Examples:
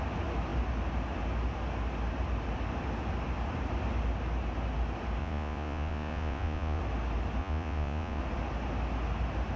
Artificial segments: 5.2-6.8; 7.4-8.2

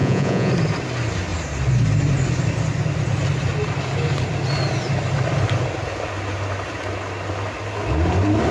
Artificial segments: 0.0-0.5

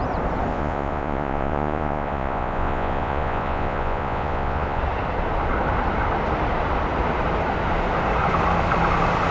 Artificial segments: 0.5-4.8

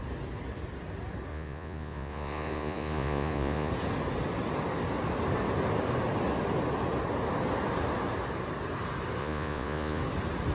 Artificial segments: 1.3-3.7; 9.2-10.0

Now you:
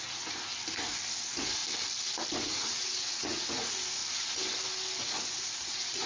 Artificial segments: 0.0-0.5; 1.1-1.6; 2.4-4.0; 5.0-6.1